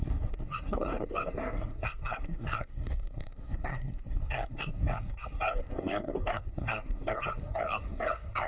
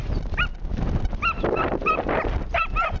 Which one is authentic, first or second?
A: second